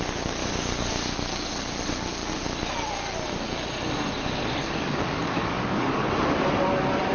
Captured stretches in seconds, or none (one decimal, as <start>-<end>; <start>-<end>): 0.0-0.4; 0.9-4.6; 5.9-7.1